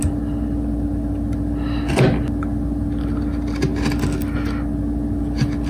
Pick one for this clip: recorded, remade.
recorded